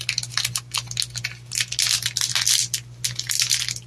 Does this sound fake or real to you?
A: real